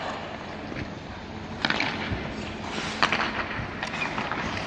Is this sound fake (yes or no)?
no